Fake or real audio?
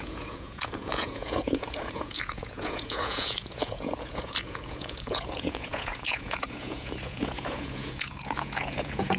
fake